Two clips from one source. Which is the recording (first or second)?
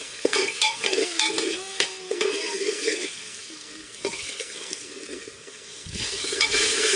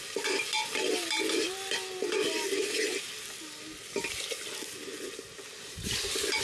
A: second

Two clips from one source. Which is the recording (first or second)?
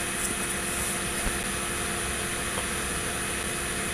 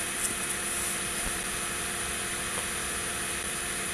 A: first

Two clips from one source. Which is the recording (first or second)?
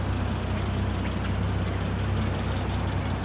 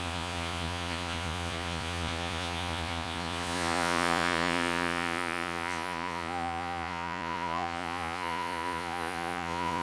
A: first